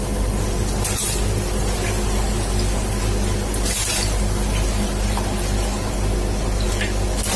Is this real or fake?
real